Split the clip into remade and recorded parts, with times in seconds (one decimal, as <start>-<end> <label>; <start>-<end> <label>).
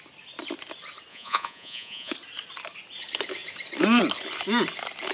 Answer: 0.0-1.1 recorded; 1.1-2.1 remade; 2.1-5.1 recorded